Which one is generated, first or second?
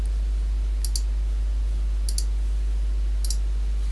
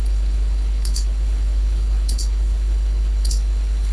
second